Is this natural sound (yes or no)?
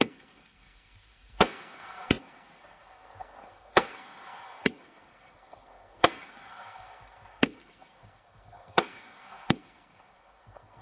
no